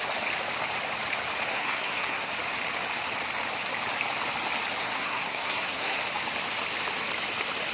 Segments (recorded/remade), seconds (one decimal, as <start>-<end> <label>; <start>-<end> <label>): 0.0-1.5 recorded; 1.5-2.3 remade; 2.3-4.8 recorded; 4.8-6.0 remade; 6.0-7.7 recorded